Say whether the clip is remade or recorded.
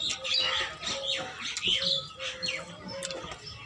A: recorded